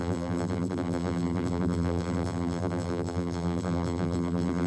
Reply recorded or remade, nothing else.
remade